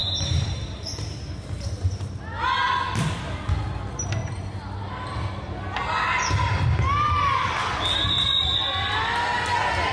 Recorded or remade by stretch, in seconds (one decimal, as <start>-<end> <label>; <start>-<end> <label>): 0.0-2.2 remade; 2.2-9.9 recorded